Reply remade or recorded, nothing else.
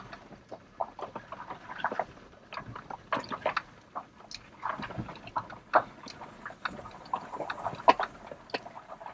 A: recorded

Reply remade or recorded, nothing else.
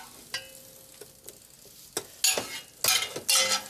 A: recorded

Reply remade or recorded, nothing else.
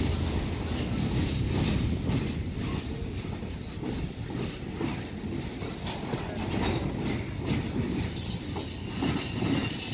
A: recorded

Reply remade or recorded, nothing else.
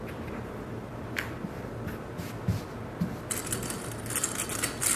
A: recorded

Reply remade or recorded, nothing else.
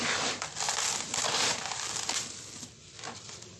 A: recorded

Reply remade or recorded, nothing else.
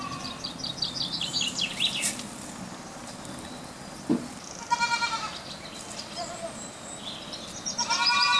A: recorded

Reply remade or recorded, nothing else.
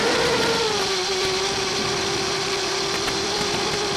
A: remade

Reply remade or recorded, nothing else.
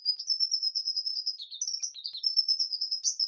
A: recorded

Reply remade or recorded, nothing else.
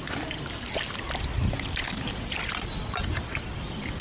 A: recorded